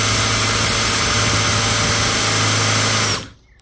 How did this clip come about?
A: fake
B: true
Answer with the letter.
B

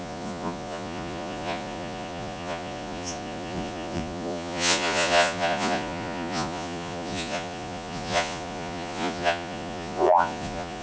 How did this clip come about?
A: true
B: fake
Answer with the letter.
B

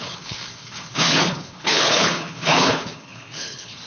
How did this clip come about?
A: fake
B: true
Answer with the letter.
A